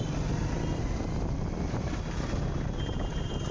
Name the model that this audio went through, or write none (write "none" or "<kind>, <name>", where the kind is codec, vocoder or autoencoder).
none